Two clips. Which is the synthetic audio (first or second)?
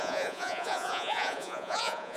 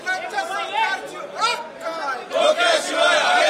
first